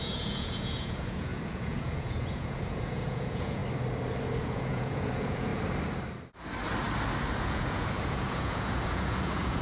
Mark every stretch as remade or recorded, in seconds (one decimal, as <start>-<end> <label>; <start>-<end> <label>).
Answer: 0.0-3.6 remade; 3.6-4.4 recorded; 4.4-5.5 remade; 5.5-7.4 recorded; 7.4-9.6 remade